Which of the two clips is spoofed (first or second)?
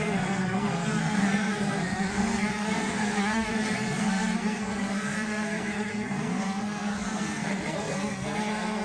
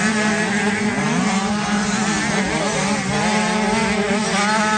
first